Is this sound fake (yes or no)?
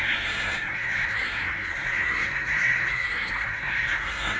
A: yes